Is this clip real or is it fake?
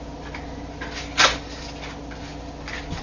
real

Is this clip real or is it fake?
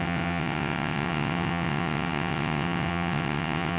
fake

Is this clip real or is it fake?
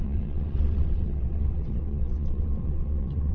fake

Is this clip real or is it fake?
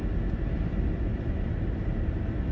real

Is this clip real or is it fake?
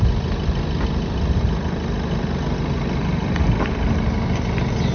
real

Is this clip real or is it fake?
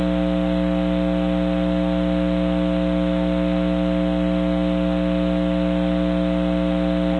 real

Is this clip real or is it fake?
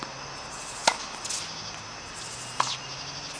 real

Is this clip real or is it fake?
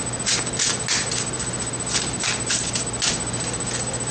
real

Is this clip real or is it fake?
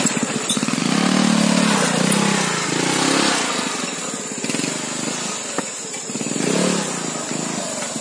real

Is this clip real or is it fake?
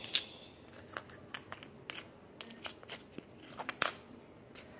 real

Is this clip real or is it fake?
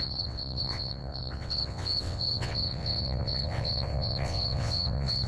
fake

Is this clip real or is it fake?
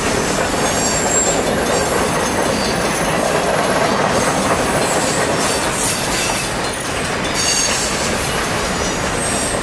real